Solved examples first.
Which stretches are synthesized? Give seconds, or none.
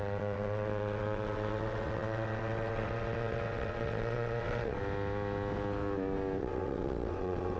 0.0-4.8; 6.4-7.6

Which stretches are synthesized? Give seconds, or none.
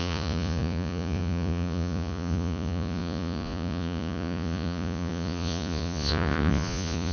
0.0-7.1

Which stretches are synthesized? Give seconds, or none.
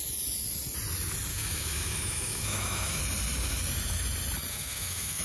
1.3-3.0; 4.5-5.2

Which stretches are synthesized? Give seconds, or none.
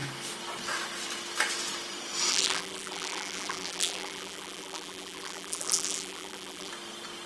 2.3-6.7